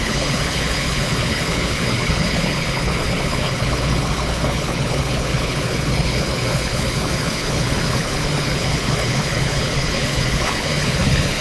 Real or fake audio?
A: fake